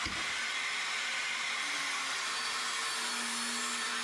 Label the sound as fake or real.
real